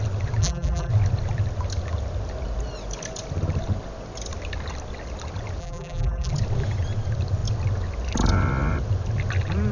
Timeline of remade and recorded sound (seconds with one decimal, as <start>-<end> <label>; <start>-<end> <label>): 0.0-0.4 recorded; 0.4-0.9 remade; 0.9-5.6 recorded; 5.6-6.3 remade; 6.3-9.7 recorded